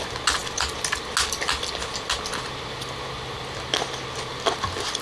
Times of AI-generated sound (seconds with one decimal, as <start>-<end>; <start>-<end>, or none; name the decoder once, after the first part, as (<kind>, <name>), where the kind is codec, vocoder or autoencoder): none